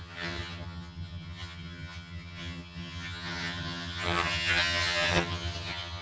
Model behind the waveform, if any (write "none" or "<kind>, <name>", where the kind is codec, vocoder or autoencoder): vocoder, HiFi-GAN